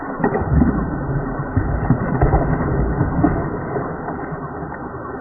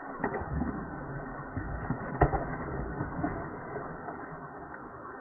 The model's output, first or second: second